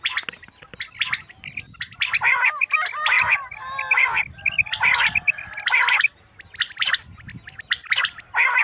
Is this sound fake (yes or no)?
no